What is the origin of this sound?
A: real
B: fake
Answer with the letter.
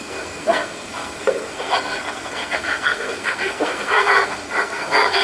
B